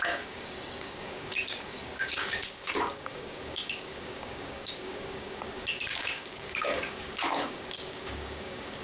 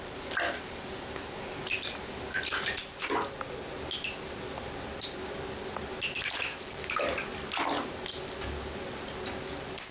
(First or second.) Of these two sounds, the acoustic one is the second